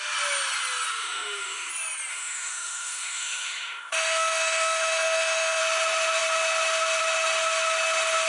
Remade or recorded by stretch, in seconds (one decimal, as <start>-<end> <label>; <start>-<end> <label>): 0.0-0.9 recorded; 0.9-1.7 remade; 1.7-2.1 recorded; 2.1-5.6 remade; 5.6-8.3 recorded